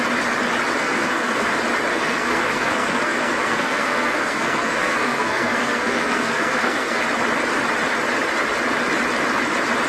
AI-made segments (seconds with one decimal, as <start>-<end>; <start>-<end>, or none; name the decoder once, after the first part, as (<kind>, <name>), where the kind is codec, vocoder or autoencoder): 0.8-1.5 (codec, SNAC); 1.9-7.0